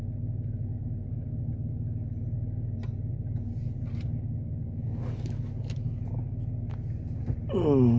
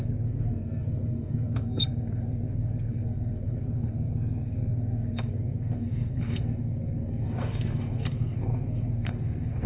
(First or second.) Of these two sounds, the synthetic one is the second